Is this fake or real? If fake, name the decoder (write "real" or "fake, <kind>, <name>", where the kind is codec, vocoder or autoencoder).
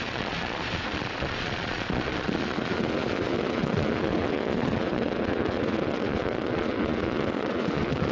fake, vocoder, Vocos